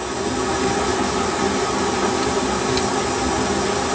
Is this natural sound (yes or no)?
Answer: yes